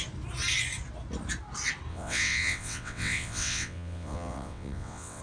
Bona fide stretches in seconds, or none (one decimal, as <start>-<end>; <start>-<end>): 0.0-1.9

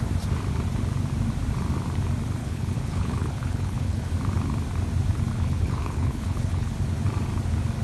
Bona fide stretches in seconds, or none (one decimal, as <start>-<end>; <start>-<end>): 0.0-2.4; 4.1-5.3; 6.7-7.8

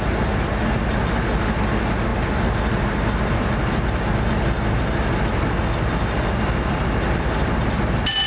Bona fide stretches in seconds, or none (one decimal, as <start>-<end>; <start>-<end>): 0.0-8.3

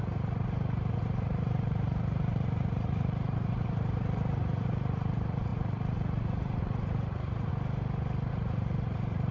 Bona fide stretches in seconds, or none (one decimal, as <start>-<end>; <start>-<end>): 7.5-8.3

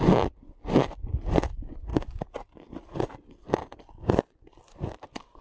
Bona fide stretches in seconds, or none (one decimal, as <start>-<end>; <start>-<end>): 0.0-1.9